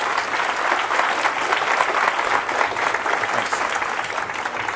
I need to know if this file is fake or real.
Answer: real